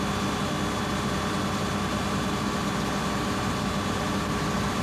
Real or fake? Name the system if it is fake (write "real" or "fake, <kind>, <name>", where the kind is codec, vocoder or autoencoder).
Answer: real